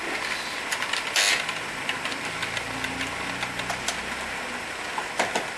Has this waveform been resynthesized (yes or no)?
no